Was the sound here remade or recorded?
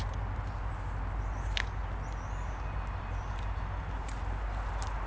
recorded